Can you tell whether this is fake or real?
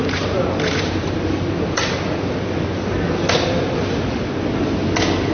real